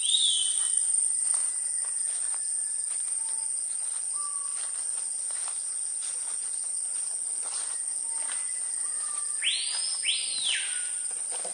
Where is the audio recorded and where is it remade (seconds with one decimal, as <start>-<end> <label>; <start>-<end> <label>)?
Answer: 0.0-11.5 recorded